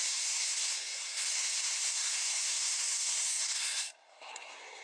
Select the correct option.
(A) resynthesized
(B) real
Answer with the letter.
A